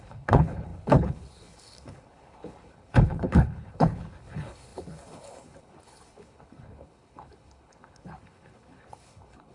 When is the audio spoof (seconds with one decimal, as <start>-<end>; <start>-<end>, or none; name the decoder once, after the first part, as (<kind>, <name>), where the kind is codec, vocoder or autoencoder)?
0.0-9.5 (codec, HILCodec)